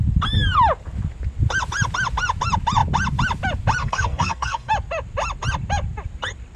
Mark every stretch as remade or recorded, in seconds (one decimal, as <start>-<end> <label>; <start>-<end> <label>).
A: 0.0-3.8 recorded; 3.8-4.7 remade; 4.7-6.6 recorded

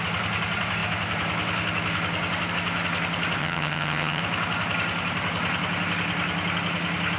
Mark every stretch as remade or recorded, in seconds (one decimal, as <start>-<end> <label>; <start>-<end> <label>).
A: 0.0-3.4 recorded; 3.4-4.2 remade; 4.2-7.2 recorded